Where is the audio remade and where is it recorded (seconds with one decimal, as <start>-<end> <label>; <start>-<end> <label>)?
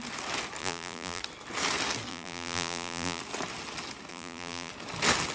0.0-0.6 recorded; 0.6-1.2 remade; 1.2-2.1 recorded; 2.1-3.2 remade; 3.2-4.1 recorded; 4.1-4.7 remade; 4.7-5.3 recorded